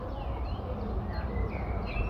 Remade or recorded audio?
recorded